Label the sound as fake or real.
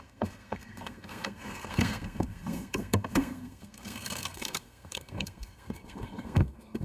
fake